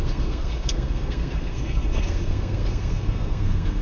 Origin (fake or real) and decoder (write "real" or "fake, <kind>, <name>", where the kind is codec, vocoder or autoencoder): fake, codec, SNAC